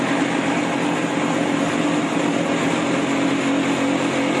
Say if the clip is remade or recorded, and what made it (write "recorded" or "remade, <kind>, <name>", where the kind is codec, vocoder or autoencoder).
recorded